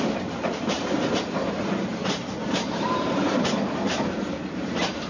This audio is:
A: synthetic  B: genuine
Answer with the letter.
A